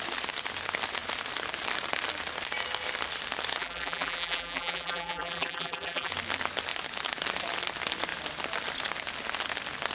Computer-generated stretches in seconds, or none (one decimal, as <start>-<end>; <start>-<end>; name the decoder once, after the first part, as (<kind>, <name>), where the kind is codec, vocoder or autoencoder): 3.6-6.1 (vocoder, BigVGAN v2)